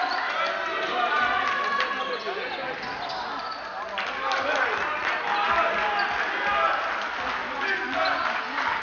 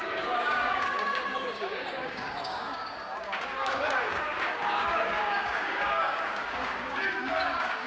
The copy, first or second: second